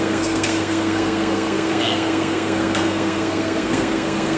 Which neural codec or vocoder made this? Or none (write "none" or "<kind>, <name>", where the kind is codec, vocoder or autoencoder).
codec, SNAC